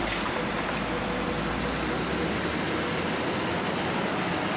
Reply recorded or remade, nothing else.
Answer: recorded